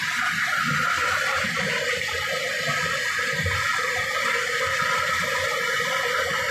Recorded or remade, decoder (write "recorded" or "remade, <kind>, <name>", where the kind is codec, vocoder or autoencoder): recorded